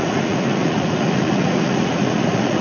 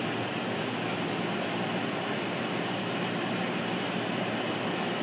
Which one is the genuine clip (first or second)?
second